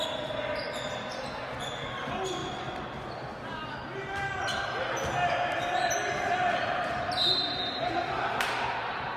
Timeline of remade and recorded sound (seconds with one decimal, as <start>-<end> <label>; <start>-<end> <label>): 0.0-9.2 recorded